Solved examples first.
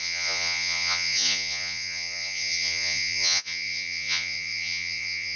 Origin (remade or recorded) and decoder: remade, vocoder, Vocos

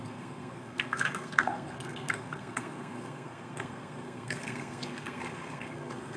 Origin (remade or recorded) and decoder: remade, codec, SNAC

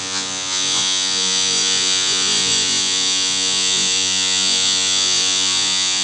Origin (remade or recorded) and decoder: remade, vocoder, Vocos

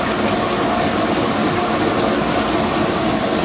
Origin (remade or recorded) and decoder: recorded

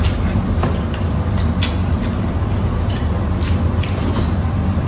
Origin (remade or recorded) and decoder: recorded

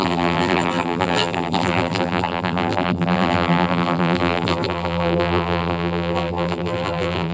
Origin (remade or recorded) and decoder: remade, vocoder, BigVGAN v2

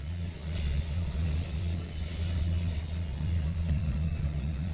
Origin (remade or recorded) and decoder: remade, vocoder, Vocos